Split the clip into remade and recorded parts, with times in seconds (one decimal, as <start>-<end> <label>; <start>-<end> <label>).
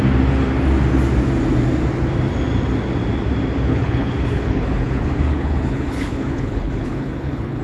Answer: 0.0-3.7 recorded; 3.7-7.6 remade